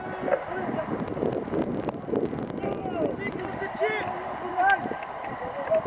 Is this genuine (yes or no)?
yes